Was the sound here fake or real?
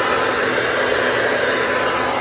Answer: real